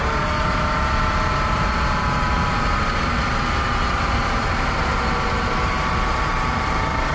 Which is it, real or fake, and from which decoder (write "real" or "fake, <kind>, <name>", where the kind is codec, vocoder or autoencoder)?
real